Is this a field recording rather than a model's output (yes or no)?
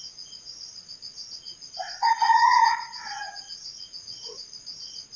no